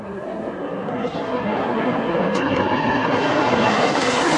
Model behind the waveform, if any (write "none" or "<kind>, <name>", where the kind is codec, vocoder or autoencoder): codec, SNAC